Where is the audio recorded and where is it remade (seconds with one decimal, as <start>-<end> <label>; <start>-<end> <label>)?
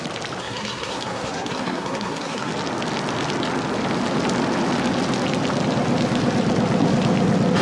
0.0-0.4 recorded; 0.4-2.5 remade; 2.5-7.6 recorded